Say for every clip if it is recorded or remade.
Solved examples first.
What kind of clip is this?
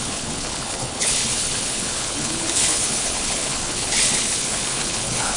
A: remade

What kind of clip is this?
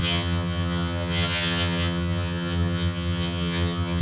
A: remade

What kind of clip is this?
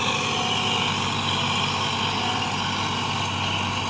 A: recorded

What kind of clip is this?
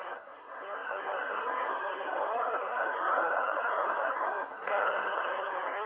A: remade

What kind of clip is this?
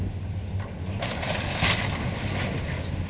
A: recorded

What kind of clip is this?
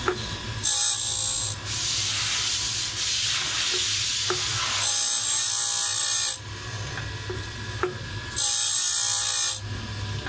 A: recorded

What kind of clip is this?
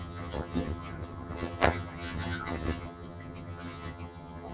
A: remade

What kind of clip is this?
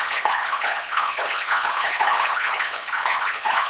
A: remade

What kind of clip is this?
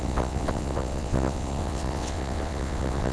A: remade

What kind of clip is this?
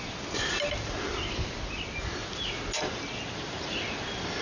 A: recorded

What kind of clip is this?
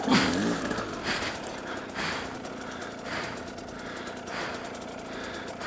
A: recorded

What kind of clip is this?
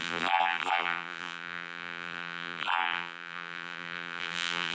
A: remade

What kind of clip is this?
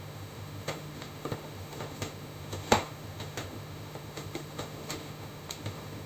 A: remade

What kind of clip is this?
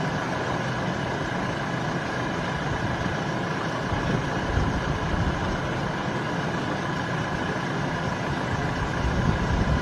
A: recorded